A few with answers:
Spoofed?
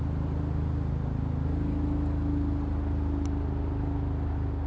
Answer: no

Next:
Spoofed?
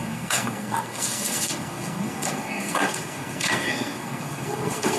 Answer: yes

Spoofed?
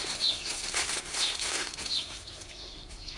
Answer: yes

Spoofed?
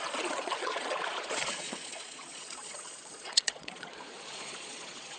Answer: yes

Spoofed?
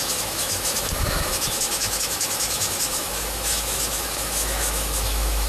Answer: yes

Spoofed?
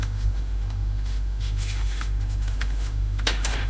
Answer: yes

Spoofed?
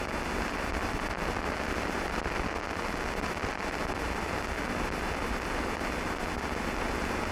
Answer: no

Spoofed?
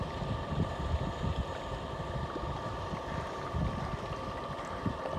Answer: no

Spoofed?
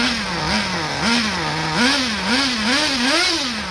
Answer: no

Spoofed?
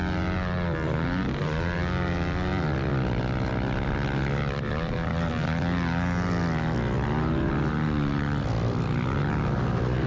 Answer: no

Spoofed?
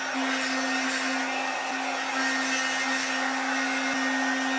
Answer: no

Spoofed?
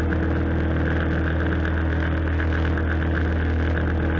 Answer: no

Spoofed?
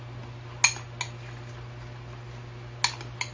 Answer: no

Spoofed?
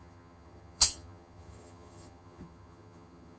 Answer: yes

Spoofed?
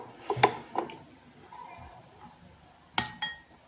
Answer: no